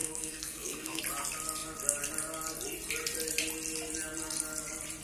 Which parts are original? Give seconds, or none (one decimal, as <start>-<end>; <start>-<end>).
1.0-5.0